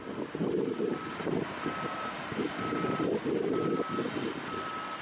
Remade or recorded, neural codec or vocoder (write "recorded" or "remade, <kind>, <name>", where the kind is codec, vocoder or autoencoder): recorded